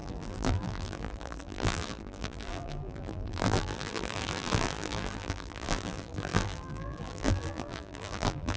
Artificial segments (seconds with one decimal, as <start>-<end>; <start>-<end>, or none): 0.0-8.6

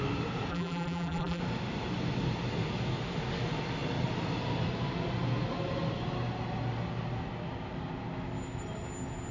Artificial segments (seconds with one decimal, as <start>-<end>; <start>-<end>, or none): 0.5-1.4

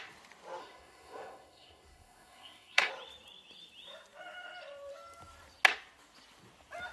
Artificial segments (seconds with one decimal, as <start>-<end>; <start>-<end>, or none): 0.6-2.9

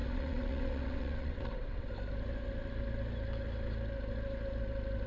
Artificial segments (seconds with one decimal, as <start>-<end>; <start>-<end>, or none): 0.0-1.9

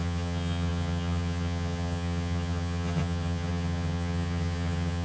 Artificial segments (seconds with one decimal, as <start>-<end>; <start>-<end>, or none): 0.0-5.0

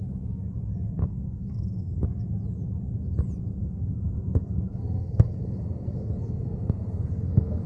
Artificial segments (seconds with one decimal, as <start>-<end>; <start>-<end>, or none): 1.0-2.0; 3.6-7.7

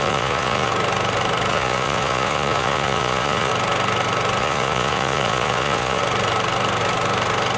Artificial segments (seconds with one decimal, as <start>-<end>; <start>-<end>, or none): 0.0-0.7; 1.5-3.5; 4.4-6.0